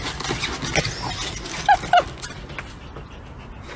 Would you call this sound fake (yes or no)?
no